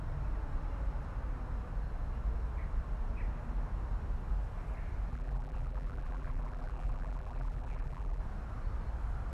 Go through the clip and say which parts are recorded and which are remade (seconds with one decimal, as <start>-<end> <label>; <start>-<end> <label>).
0.0-5.1 recorded; 5.1-8.2 remade; 8.2-9.3 recorded